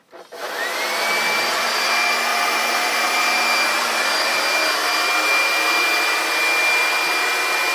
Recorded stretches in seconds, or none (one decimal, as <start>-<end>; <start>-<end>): 0.0-2.3; 4.4-7.7

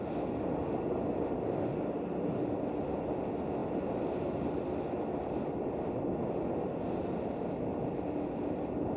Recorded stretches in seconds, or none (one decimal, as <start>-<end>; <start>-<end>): 0.0-9.0

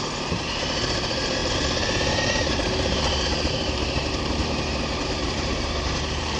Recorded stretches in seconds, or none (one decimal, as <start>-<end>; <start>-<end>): none

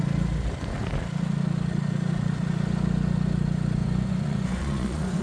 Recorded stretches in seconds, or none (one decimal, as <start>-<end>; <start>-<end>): 0.0-3.8

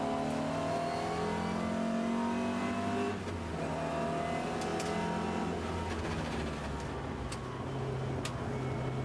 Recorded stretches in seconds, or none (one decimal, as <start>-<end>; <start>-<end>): 0.0-9.0

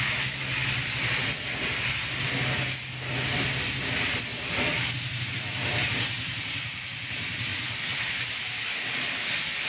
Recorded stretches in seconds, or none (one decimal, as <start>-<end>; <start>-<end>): 0.0-9.7

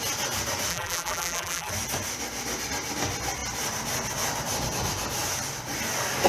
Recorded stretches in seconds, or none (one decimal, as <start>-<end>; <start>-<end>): 0.0-0.7; 1.7-6.3